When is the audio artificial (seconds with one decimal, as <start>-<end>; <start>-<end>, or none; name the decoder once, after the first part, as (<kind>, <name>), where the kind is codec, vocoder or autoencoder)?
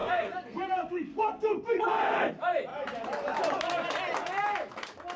0.0-2.3 (codec, SNAC)